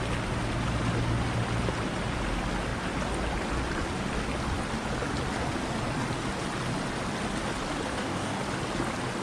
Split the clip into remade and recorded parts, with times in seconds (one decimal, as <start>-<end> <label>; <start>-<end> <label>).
0.0-7.9 recorded; 7.9-8.4 remade; 8.4-9.2 recorded